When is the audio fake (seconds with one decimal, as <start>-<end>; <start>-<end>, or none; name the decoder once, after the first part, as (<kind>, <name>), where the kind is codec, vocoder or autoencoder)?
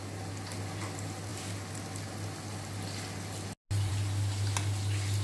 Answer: none